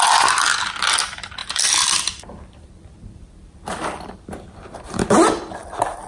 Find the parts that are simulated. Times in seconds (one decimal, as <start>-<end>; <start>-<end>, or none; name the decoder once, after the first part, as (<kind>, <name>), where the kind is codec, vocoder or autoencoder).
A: 1.4-5.1 (vocoder, BigVGAN v2)